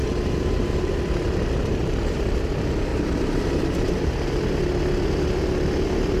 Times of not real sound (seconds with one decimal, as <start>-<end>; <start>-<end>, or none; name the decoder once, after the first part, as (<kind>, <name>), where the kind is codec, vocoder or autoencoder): 0.0-0.9 (vocoder, BigVGAN v2); 1.7-2.5; 2.9-4.4